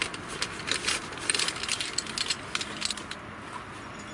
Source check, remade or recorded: recorded